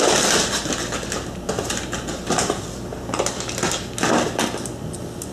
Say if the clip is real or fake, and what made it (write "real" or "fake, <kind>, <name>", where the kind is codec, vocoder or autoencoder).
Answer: real